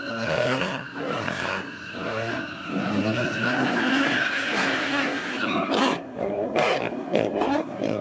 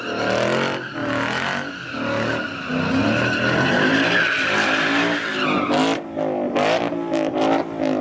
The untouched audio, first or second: second